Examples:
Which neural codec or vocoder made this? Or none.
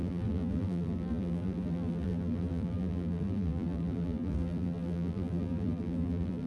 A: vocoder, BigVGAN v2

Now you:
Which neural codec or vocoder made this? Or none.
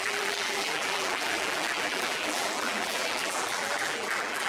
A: vocoder, BigVGAN v2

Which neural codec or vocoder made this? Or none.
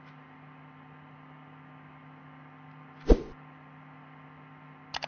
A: none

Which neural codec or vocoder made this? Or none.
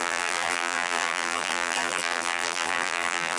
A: vocoder, BigVGAN v2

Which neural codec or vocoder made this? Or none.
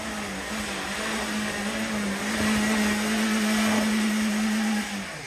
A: none